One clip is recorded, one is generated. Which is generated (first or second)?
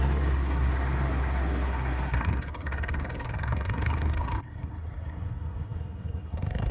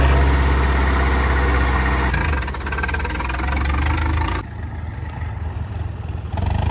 first